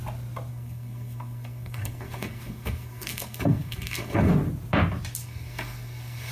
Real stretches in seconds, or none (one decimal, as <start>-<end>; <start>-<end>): 0.0-0.5; 4.3-5.2